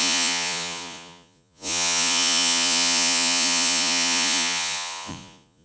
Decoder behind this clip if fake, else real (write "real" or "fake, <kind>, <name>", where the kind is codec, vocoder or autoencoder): fake, vocoder, Vocos